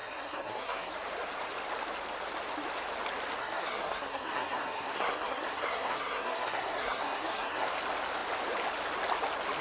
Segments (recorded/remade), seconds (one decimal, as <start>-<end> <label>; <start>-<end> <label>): 0.0-0.9 remade; 0.9-3.4 recorded; 3.4-7.7 remade; 7.7-9.6 recorded